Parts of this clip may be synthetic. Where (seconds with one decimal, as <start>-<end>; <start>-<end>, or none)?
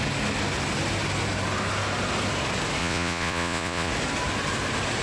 2.8-3.9